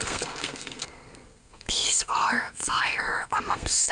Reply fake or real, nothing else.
fake